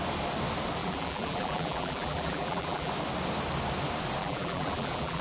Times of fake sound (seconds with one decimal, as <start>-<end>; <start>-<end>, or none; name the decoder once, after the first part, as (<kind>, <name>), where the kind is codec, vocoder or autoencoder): 0.8-2.9 (vocoder, BigVGAN v2); 4.2-5.2